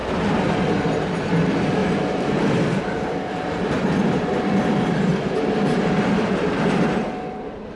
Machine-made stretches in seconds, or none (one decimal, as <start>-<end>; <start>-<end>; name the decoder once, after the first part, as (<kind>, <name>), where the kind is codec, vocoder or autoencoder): 0.8-5.1 (vocoder, BigVGAN v2); 6.1-7.8